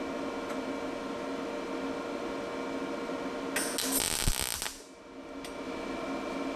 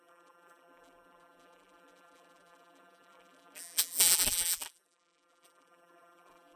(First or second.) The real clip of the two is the first